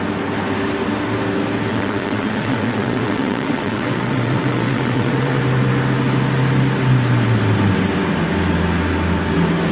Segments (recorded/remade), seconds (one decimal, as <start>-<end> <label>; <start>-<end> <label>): 0.0-1.7 recorded; 1.7-5.4 remade; 5.4-9.7 recorded